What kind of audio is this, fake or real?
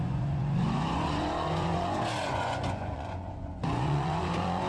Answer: fake